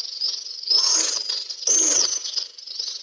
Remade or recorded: recorded